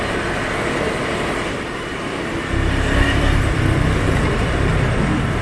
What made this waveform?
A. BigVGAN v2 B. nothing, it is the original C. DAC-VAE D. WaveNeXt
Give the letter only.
B